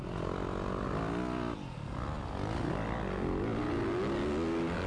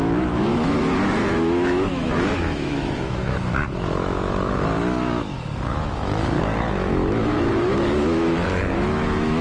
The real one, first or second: first